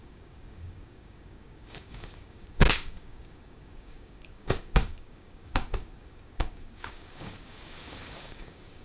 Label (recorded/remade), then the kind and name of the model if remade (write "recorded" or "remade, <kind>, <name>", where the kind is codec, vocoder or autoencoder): remade, codec, DAC